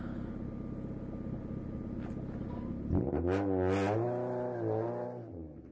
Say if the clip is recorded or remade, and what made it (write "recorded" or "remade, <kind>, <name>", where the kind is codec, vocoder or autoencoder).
recorded